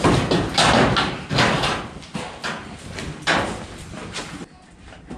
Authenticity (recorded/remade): recorded